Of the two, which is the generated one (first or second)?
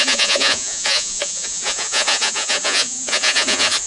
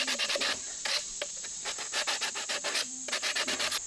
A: first